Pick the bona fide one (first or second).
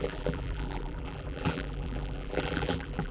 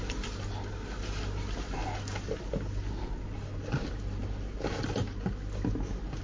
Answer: second